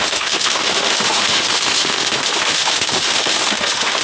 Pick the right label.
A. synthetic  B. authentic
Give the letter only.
A